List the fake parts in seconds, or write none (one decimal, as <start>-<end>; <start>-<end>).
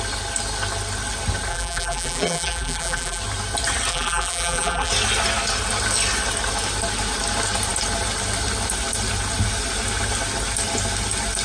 1.5-3.2; 3.9-4.9